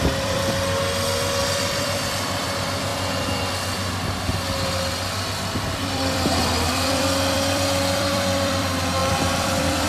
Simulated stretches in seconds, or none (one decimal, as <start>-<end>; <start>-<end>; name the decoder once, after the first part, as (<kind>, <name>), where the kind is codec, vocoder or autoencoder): 0.0-0.8 (vocoder, BigVGAN v2); 1.4-2.9; 5.9-9.9